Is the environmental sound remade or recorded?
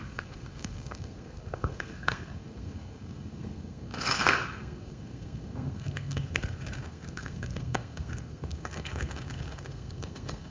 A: remade